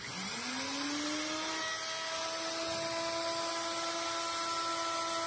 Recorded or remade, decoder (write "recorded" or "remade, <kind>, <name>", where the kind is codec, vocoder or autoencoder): recorded